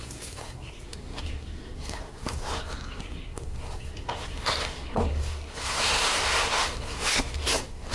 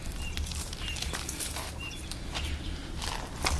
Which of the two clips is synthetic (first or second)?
first